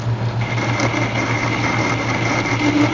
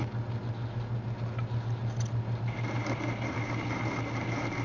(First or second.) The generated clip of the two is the second